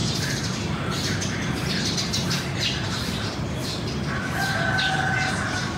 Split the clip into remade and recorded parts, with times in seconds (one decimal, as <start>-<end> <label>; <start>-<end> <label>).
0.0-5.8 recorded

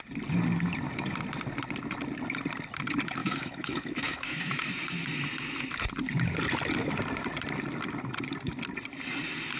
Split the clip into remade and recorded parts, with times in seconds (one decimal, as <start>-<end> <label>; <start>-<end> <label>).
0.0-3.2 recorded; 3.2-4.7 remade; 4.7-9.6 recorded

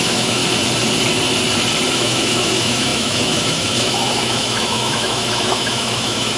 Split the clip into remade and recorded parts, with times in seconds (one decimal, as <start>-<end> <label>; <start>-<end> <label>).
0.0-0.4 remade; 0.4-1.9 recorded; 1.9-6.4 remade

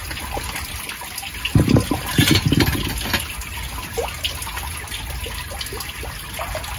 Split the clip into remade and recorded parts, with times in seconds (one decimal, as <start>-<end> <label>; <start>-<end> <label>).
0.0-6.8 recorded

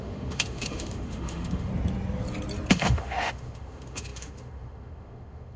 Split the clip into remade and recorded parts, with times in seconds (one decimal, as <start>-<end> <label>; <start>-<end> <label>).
0.0-1.7 remade; 1.7-2.7 recorded; 2.7-5.6 remade

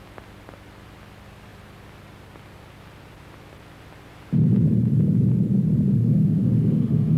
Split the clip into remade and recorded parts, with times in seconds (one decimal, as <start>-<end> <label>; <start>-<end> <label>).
0.0-6.0 recorded; 6.0-7.2 remade

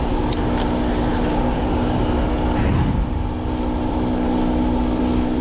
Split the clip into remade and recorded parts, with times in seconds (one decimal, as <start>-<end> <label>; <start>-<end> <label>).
0.0-5.4 recorded

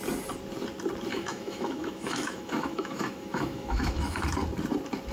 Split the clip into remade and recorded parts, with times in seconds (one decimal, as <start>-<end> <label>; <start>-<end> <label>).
0.0-1.1 recorded; 1.1-4.2 remade; 4.2-5.1 recorded